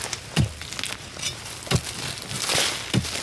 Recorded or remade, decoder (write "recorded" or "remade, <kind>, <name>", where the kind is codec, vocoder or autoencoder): recorded